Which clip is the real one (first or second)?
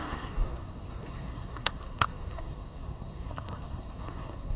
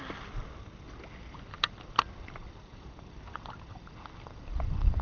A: second